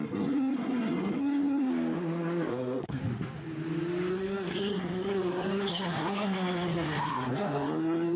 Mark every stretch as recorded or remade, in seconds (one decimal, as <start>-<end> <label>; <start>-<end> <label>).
0.0-1.7 remade; 1.7-2.5 recorded; 2.5-3.0 remade; 3.0-4.1 recorded; 4.1-8.2 remade

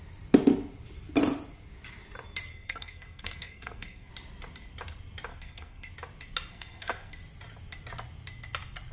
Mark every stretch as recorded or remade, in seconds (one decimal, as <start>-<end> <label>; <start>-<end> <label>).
0.0-2.5 recorded; 2.5-4.1 remade; 4.1-5.3 recorded; 5.3-5.9 remade; 5.9-6.5 recorded; 6.5-7.2 remade; 7.2-8.9 recorded